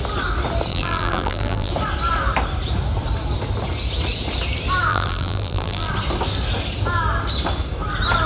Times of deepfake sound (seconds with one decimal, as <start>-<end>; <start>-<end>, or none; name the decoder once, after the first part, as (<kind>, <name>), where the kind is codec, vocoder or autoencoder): 0.7-1.7 (vocoder, BigVGAN v2); 4.9-5.9